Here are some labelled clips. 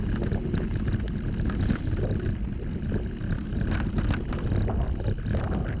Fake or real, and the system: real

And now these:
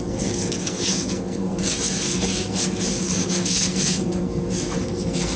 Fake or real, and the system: fake, codec, SNAC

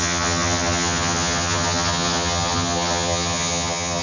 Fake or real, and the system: fake, vocoder, HiFi-GAN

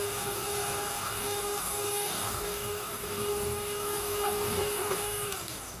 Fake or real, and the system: fake, codec, DAC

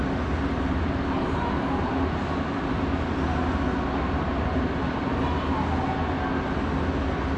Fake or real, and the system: real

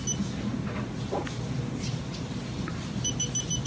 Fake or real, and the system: real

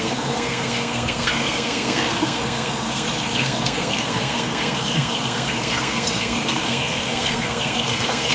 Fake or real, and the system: fake, codec, SNAC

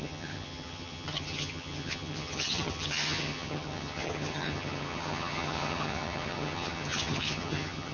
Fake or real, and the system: fake, vocoder, HiFi-GAN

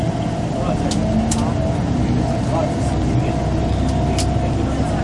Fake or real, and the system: real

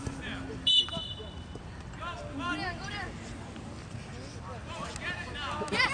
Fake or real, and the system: real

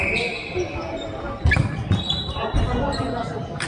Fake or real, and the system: real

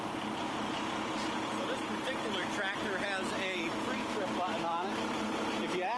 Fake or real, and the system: real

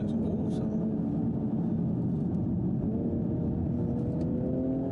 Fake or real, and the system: real